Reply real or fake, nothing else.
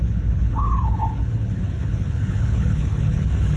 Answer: fake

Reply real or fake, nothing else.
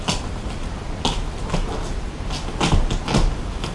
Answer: real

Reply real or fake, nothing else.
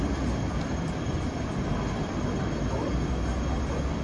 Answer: real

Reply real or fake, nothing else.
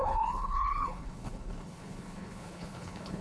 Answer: fake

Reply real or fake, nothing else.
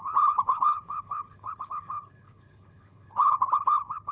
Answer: fake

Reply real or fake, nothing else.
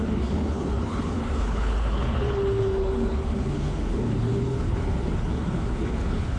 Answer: fake